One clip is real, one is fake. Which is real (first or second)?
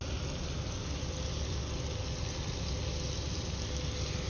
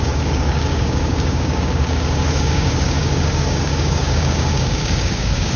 first